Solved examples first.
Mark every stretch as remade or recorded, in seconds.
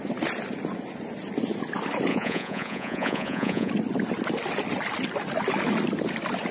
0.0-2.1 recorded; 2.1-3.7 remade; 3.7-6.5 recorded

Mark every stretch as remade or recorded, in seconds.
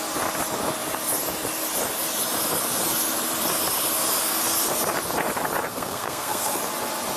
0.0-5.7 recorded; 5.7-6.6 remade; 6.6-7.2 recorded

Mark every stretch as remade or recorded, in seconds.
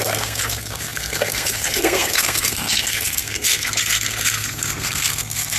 0.0-5.6 remade